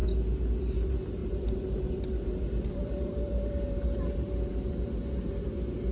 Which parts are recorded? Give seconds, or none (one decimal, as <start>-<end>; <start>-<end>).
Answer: 0.0-1.2; 4.7-5.9